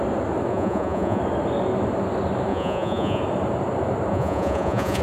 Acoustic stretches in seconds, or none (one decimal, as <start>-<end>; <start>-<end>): 0.0-0.5; 1.2-2.5; 3.2-4.1